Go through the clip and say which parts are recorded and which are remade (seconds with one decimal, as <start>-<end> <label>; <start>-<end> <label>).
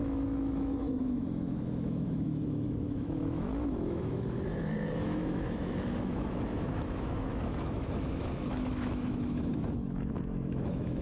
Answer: 0.0-11.0 remade